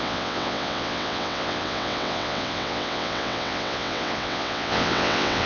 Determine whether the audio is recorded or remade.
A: remade